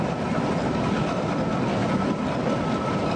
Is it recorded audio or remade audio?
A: recorded